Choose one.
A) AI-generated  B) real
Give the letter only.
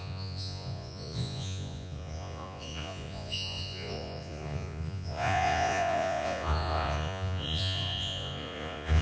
A